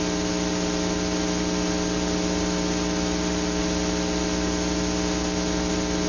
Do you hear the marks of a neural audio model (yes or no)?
no